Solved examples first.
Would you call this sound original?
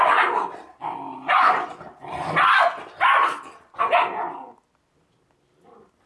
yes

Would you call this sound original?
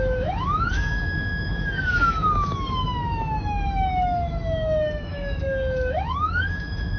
no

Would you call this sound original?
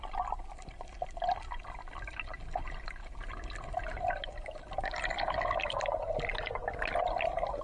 yes